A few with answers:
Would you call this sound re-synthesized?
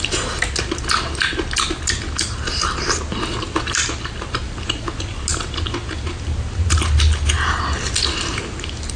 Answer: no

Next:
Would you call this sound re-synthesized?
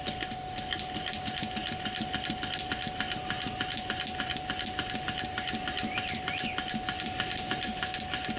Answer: no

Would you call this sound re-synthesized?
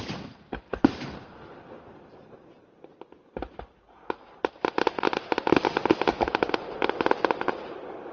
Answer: yes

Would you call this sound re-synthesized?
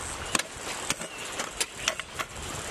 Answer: no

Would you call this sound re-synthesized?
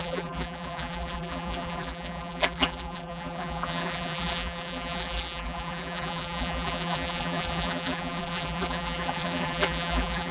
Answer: yes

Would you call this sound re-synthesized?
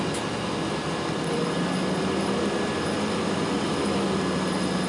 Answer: no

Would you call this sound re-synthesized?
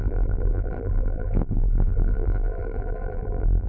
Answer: yes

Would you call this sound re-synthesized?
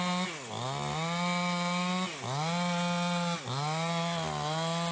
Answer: no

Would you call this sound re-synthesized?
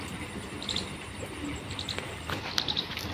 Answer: yes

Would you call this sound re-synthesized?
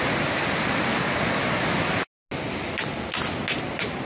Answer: no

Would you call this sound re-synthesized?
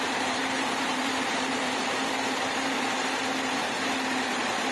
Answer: yes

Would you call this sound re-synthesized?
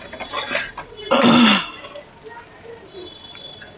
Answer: no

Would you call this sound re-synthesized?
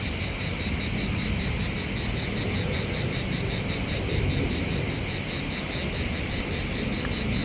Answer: no